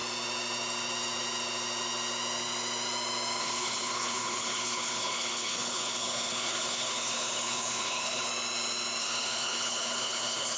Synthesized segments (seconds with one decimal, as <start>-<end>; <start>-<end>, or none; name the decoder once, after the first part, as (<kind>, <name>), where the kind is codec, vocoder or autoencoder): 3.4-8.3 (codec, HILCodec); 9.0-10.6